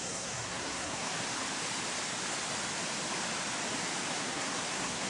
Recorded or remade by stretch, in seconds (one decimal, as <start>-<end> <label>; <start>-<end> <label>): 0.0-1.1 remade; 1.1-4.1 recorded; 4.1-5.1 remade